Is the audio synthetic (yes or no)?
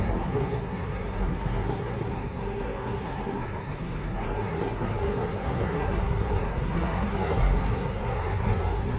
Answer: yes